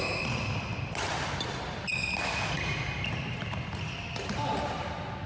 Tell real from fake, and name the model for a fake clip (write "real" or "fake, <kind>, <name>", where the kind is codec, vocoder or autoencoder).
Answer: real